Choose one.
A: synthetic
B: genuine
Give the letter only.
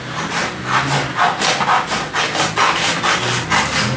B